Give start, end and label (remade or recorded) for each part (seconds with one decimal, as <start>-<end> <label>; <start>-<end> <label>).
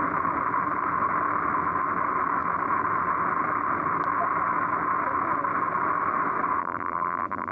0.0-6.6 recorded; 6.6-7.5 remade